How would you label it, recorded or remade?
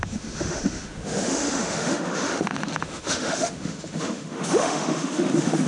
remade